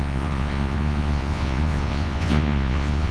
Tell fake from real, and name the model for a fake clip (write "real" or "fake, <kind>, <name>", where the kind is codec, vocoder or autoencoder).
fake, vocoder, Vocos